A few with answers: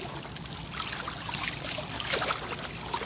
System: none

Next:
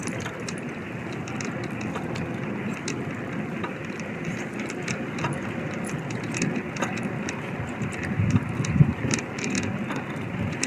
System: none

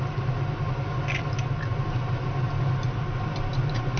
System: none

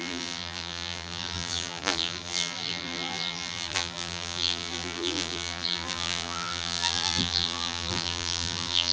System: vocoder, BigVGAN v2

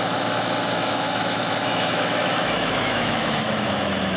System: autoencoder, DAC-VAE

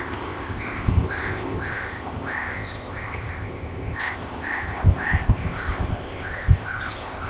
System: codec, ZipCodec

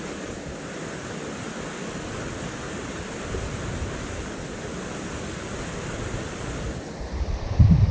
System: vocoder, BigVGAN v2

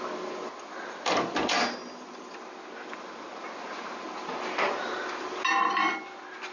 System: none